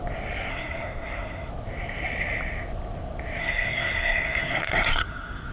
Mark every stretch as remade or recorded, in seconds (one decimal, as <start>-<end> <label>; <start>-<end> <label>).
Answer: 0.0-0.5 recorded; 0.5-1.5 remade; 1.5-3.4 recorded; 3.4-5.5 remade